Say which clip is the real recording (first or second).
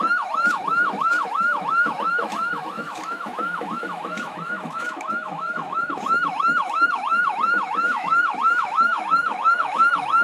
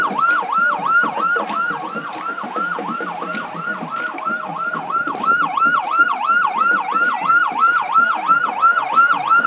second